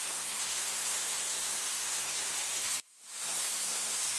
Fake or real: fake